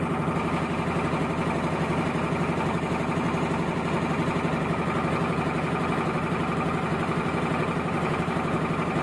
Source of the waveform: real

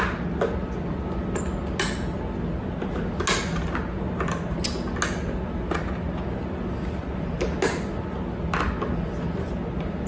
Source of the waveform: real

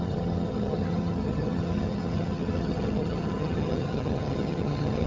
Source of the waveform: fake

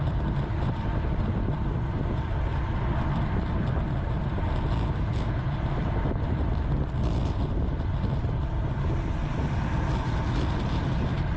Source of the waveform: real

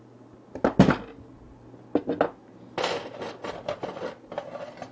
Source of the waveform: real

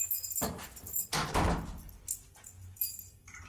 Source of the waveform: real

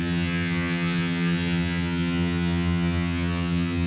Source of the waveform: fake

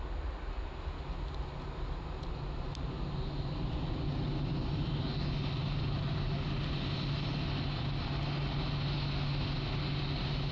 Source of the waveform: real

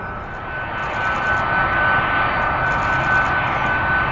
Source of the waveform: real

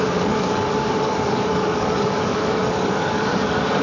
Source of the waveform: fake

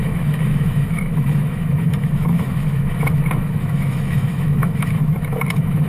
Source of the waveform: fake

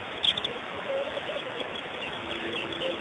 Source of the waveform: fake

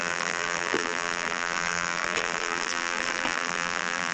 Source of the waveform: fake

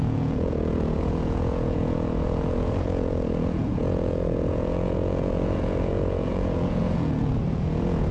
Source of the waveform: fake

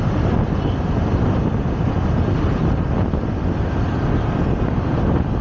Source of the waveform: real